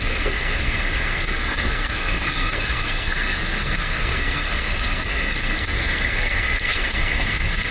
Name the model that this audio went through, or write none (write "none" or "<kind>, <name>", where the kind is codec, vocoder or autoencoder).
codec, SNAC